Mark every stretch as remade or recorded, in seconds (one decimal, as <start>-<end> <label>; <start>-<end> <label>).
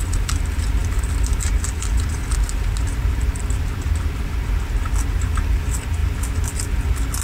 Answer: 0.0-7.2 recorded